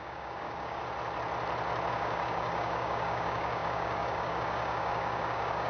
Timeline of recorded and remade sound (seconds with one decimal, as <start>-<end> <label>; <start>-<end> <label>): 0.0-0.8 remade; 0.8-1.9 recorded; 1.9-5.7 remade